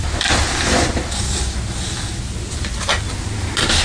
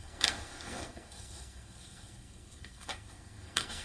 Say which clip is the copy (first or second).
second